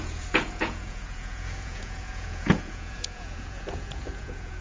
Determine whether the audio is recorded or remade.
remade